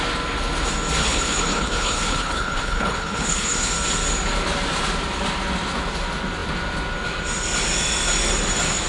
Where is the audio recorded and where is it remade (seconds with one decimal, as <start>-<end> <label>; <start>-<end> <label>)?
0.0-1.0 recorded; 1.0-3.7 remade; 3.7-8.9 recorded